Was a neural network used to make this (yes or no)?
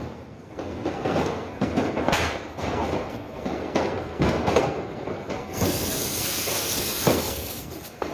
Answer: yes